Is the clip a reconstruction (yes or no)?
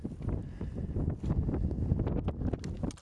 no